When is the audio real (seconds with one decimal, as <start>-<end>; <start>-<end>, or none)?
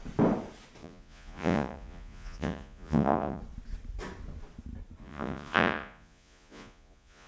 0.0-0.8; 3.4-5.0